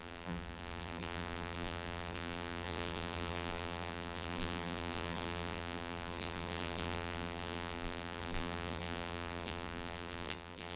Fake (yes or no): yes